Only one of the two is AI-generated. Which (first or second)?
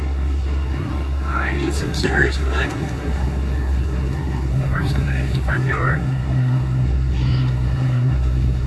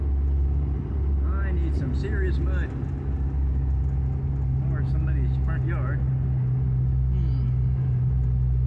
first